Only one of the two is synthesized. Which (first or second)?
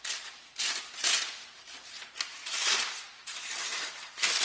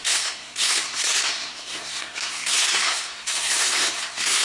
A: second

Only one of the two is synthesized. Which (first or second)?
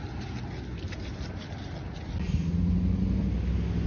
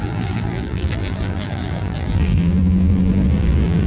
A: second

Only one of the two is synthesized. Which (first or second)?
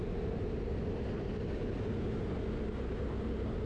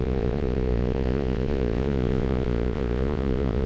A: second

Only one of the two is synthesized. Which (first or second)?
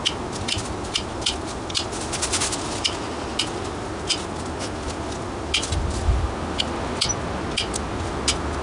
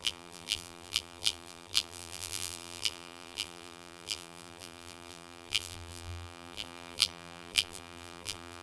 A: second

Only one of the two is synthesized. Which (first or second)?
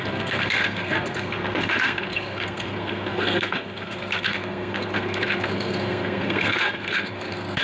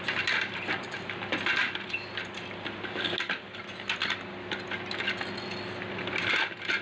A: first